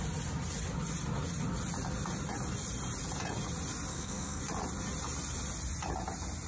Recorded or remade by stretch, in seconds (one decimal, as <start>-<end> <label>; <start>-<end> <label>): 0.0-3.9 recorded; 3.9-4.4 remade; 4.4-6.5 recorded